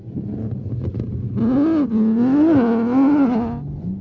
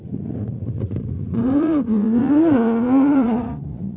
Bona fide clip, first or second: first